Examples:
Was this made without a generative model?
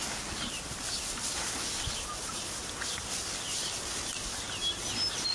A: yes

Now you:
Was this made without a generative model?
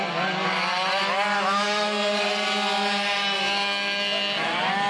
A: yes